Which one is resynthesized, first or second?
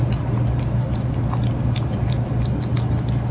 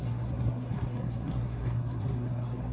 second